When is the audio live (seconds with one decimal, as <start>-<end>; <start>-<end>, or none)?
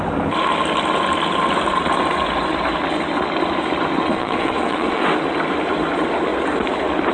0.0-4.1; 5.0-7.1